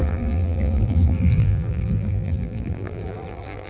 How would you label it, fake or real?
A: fake